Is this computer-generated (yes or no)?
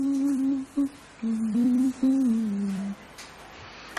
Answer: yes